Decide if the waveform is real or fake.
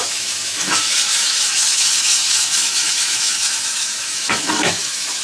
fake